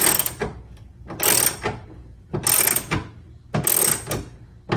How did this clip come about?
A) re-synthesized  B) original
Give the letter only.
B